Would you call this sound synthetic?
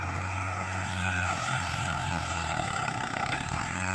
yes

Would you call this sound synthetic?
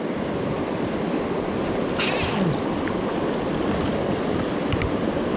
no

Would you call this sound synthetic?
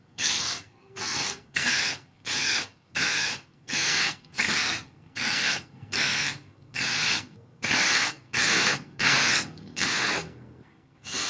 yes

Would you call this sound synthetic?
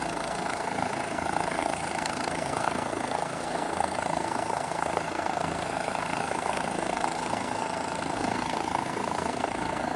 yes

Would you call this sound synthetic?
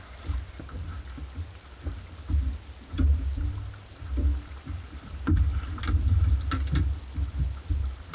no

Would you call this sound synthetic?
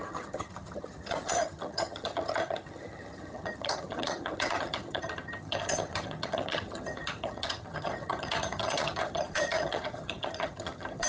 yes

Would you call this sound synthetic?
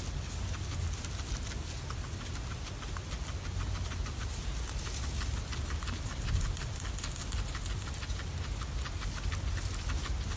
no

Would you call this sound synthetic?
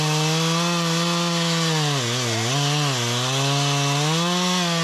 no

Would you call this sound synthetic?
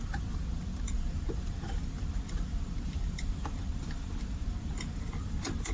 yes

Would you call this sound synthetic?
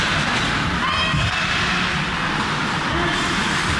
no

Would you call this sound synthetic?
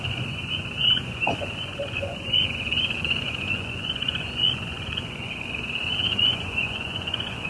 yes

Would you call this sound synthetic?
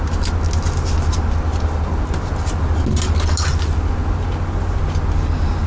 no